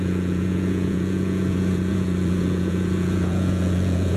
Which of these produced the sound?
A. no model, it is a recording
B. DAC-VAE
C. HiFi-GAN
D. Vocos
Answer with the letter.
D